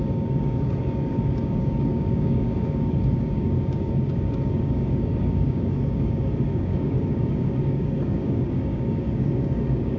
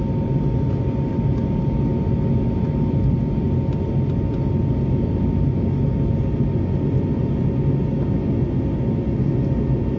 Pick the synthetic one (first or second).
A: first